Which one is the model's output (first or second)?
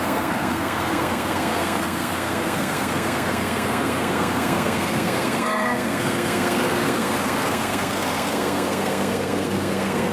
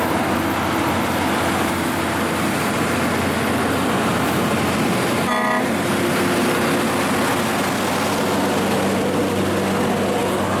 first